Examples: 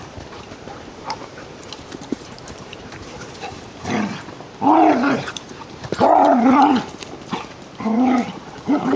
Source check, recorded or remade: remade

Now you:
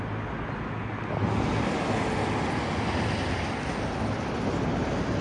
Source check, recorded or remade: recorded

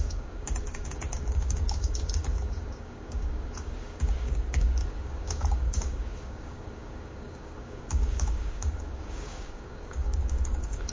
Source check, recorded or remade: remade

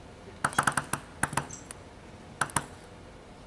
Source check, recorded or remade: recorded